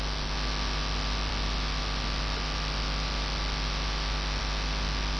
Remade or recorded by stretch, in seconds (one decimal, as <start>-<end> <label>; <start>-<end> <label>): 0.0-5.2 recorded